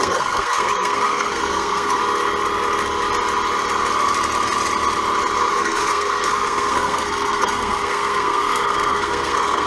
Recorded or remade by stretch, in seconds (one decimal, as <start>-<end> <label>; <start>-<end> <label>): 0.0-2.0 remade; 2.0-5.5 recorded; 5.5-9.7 remade